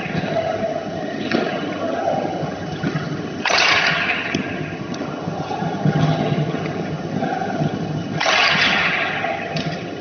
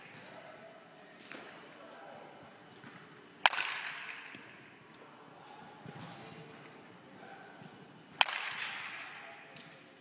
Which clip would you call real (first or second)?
second